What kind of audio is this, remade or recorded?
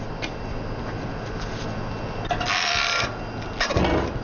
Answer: recorded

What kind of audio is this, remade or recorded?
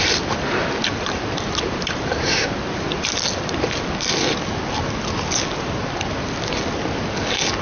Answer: recorded